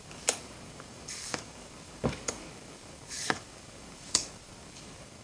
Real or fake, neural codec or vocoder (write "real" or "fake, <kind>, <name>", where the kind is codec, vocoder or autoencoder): fake, codec, DAC